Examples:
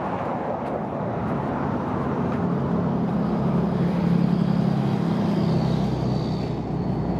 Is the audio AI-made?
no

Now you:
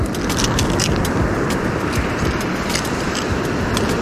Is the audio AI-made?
no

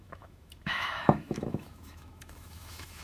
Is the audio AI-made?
yes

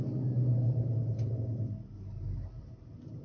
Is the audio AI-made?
no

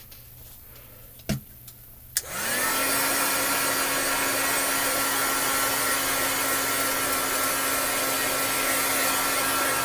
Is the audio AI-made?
no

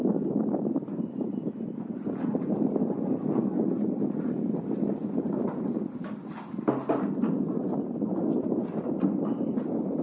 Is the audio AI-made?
no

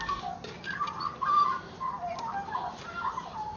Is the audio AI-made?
no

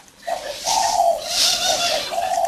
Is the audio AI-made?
no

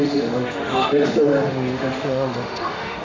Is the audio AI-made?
yes